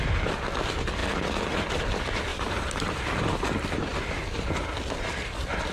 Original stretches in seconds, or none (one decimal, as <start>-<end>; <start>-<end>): 0.0-2.3; 2.9-5.7